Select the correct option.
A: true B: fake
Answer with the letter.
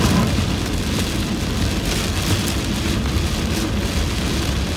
A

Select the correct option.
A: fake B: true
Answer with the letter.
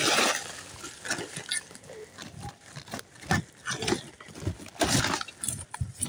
B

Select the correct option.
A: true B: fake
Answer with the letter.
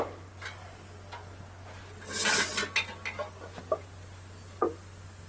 A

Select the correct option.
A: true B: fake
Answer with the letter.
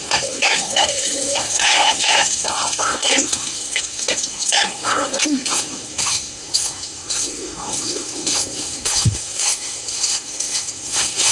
B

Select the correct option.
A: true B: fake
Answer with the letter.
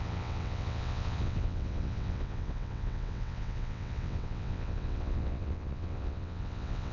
B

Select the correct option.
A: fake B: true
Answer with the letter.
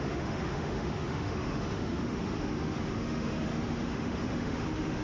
A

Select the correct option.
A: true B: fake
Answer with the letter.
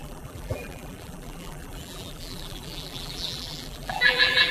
B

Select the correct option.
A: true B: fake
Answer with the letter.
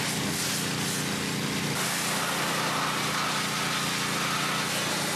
A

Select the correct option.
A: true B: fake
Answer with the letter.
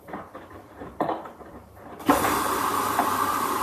B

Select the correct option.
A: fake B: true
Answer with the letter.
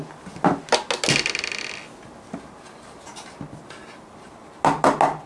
B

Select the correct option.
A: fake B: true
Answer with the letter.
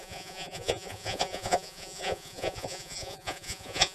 A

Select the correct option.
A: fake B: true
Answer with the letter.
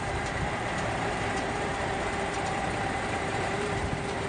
A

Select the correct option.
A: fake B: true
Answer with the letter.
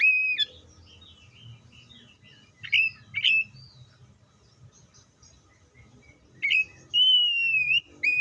B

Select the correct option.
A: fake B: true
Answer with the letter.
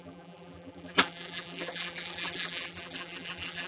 A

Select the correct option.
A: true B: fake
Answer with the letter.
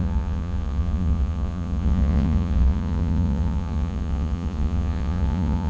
B